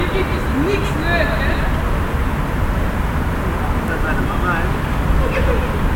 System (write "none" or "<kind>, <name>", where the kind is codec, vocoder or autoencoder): none